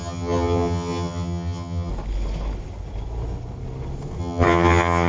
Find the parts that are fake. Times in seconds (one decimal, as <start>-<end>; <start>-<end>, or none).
0.0-1.9; 4.2-5.1